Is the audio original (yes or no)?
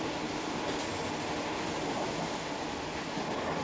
yes